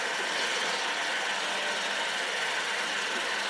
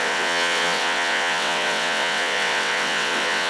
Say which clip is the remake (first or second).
second